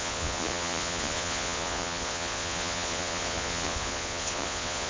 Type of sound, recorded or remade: remade